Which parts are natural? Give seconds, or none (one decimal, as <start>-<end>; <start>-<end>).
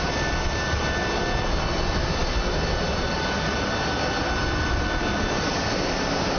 0.0-6.4